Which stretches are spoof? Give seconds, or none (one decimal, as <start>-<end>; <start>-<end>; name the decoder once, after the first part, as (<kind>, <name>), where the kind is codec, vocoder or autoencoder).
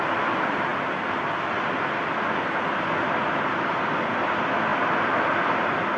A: none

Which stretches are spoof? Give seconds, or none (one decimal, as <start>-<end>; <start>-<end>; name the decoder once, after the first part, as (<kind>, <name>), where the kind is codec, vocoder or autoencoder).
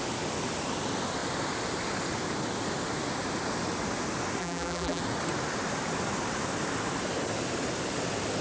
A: 4.4-5.0 (vocoder, BigVGAN v2)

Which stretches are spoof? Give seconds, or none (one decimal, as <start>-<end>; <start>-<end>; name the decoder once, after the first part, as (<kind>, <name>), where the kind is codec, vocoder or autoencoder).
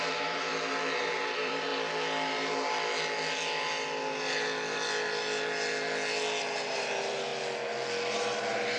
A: 0.0-0.5 (vocoder, BigVGAN v2); 1.0-1.7; 6.4-7.3; 8.1-8.8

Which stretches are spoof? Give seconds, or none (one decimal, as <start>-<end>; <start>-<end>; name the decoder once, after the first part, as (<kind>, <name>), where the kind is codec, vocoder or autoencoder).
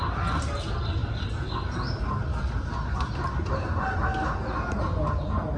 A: none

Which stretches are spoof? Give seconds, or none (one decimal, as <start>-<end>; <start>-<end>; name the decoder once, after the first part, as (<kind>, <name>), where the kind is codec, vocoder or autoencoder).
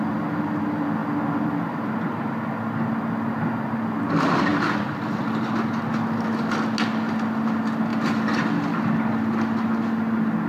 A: none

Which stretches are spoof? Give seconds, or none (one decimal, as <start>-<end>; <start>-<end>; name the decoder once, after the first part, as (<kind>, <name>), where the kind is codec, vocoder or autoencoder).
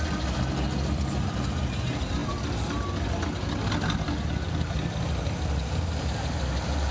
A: none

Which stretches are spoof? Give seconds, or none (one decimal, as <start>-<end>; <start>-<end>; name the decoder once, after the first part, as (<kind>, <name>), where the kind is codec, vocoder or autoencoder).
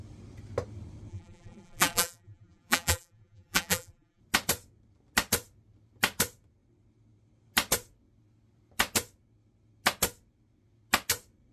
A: 1.1-4.2 (vocoder, BigVGAN v2)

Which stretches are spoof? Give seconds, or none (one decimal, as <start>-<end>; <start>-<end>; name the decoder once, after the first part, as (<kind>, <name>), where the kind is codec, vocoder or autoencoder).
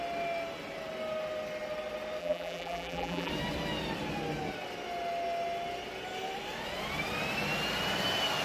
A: 2.2-3.3 (vocoder, BigVGAN v2)